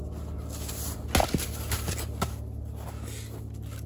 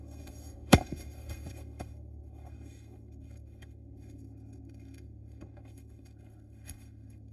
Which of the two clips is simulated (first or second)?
second